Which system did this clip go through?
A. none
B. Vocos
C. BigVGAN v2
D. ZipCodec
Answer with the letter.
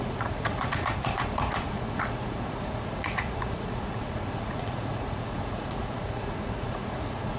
B